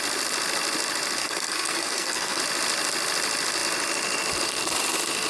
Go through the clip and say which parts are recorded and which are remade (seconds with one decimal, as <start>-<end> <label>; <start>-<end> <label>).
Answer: 0.0-1.2 recorded; 1.2-2.4 remade; 2.4-5.3 recorded